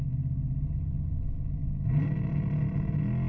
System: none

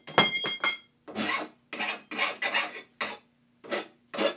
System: none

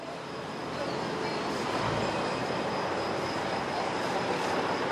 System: none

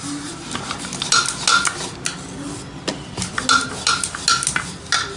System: none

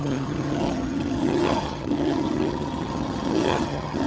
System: vocoder, HiFi-GAN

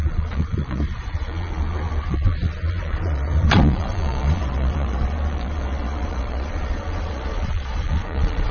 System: vocoder, Vocos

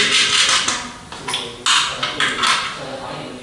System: none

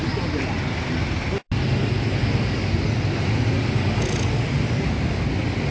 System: none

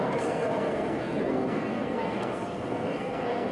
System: codec, SNAC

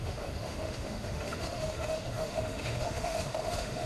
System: autoencoder, DAC-VAE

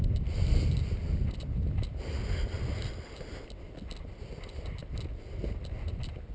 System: none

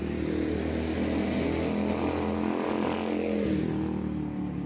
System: none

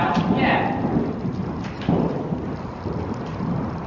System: none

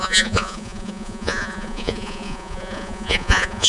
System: vocoder, Vocos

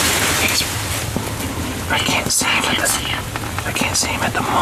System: none